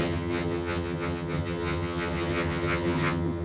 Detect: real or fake fake